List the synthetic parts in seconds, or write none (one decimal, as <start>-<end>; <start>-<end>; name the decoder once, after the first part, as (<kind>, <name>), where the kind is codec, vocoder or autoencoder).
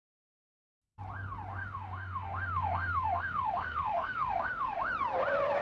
1.5-4.9 (autoencoder, DAC-VAE)